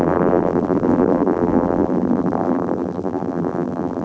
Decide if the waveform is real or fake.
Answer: fake